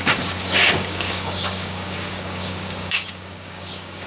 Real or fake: fake